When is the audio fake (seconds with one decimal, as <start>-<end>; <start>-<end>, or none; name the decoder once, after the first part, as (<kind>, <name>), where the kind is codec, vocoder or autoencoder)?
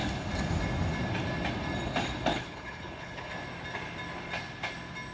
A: 2.3-3.3 (codec, HILCodec)